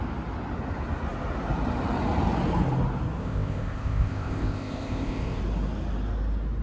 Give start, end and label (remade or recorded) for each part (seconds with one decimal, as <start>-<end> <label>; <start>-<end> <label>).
0.0-3.2 recorded; 3.2-5.4 remade; 5.4-6.6 recorded